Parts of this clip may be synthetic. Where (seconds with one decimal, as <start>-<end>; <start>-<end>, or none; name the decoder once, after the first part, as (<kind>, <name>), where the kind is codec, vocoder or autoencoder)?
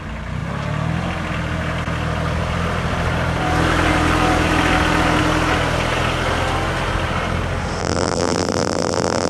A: 7.8-9.3 (vocoder, BigVGAN v2)